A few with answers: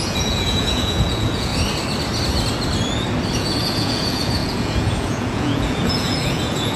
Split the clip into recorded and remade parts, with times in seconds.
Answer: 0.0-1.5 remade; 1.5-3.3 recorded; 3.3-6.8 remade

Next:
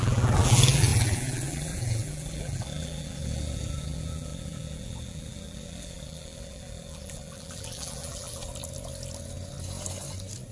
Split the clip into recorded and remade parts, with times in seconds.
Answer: 0.0-8.4 remade; 8.4-10.5 recorded

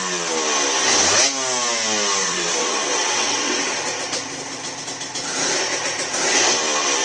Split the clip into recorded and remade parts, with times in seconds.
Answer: 0.0-2.2 recorded; 2.2-3.8 remade; 3.8-7.0 recorded

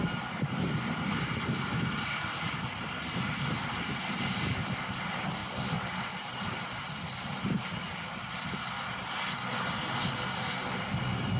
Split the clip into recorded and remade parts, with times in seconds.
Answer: 0.0-11.4 recorded

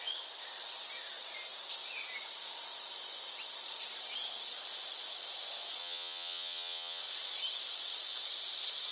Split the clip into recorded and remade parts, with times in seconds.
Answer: 0.0-5.8 recorded; 5.8-7.0 remade; 7.0-8.9 recorded

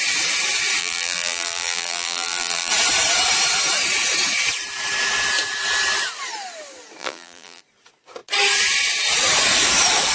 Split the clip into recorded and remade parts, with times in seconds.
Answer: 0.0-0.8 recorded; 0.8-2.7 remade; 2.7-7.0 recorded; 7.0-7.6 remade; 7.6-10.1 recorded

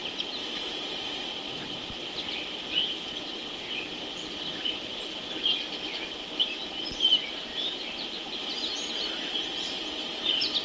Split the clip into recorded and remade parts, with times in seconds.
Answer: 0.0-1.9 remade; 1.9-7.5 recorded; 7.5-8.5 remade; 8.5-10.6 recorded